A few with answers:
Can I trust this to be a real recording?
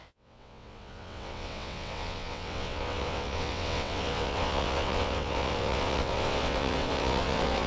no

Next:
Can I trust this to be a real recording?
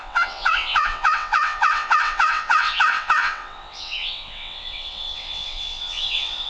no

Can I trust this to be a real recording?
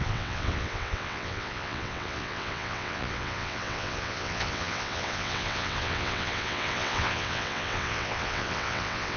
no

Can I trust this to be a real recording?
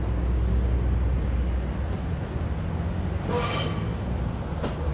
yes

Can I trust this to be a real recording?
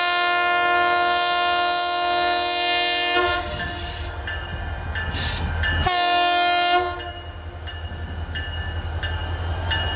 yes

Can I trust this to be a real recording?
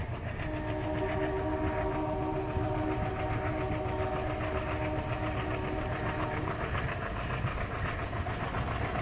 yes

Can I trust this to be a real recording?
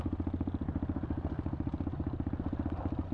yes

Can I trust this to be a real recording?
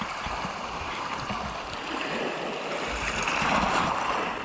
yes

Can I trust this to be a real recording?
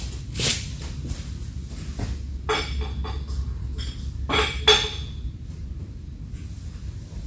yes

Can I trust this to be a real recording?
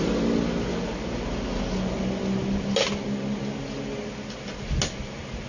yes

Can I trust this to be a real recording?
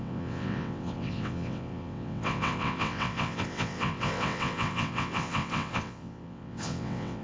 no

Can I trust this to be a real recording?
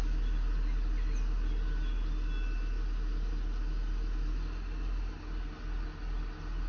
yes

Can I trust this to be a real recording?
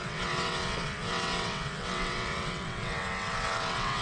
no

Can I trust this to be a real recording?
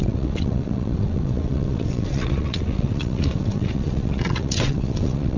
no